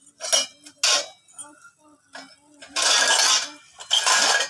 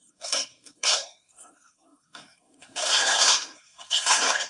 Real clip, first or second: first